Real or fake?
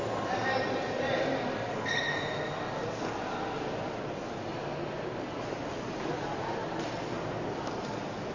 real